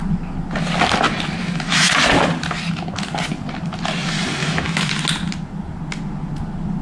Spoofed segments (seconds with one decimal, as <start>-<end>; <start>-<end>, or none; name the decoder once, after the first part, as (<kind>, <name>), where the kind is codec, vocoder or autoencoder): 1.4-1.9 (autoencoder, DAC-VAE); 4.4-4.9